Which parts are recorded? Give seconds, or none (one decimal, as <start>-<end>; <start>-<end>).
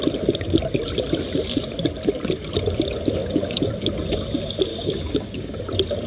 0.0-3.2; 3.7-4.7; 5.6-6.1